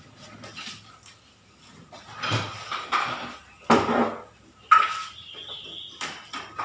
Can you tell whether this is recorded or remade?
recorded